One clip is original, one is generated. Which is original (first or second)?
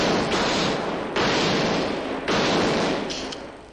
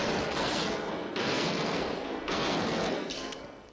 first